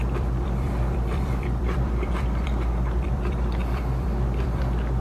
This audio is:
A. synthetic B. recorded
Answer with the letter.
A